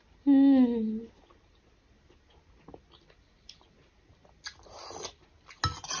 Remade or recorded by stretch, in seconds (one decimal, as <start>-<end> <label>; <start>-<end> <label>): 0.0-6.0 recorded